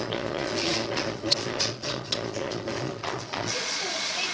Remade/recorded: remade